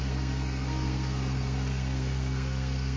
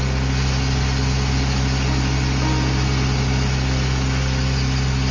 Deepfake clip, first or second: first